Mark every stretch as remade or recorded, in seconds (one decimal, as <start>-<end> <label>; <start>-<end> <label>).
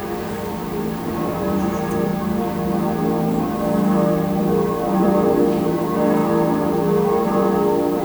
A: 0.0-2.1 remade; 2.1-4.4 recorded; 4.4-6.2 remade; 6.2-8.0 recorded